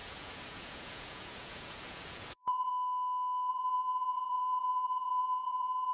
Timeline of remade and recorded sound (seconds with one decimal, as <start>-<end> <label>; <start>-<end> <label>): 0.0-2.7 remade; 2.7-3.5 recorded; 3.5-5.9 remade